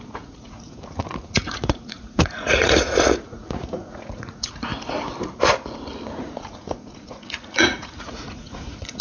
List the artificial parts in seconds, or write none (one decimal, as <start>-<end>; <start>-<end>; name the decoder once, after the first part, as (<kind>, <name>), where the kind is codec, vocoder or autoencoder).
0.0-4.7 (vocoder, Vocos); 6.2-9.0